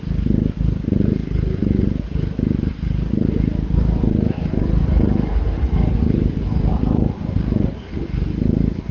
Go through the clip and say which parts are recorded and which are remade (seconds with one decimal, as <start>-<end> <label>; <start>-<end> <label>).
0.0-8.9 recorded